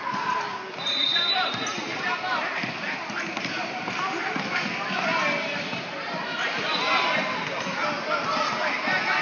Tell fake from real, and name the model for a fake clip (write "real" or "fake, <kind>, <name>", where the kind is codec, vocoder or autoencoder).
real